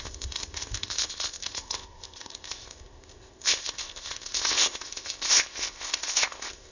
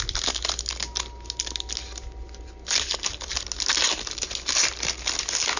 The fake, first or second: first